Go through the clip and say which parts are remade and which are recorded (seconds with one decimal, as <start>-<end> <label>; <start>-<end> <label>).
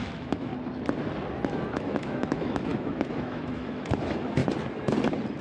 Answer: 0.0-0.5 remade; 0.5-1.7 recorded; 1.7-4.4 remade; 4.4-5.4 recorded